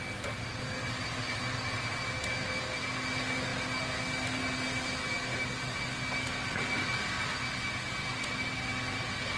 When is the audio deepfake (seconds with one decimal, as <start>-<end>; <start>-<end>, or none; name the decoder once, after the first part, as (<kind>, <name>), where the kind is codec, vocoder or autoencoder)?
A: none